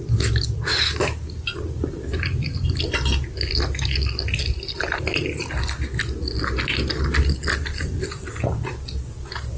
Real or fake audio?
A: real